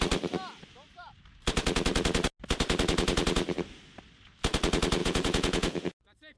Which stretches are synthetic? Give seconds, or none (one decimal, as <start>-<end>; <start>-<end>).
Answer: 5.0-5.9